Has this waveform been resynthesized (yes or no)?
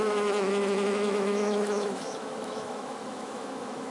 yes